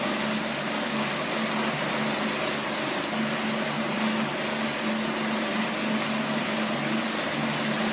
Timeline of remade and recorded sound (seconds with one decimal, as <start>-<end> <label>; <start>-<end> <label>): 0.0-7.9 recorded

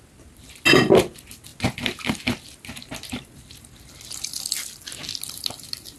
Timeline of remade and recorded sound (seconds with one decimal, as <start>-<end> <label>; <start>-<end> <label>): 0.0-6.0 recorded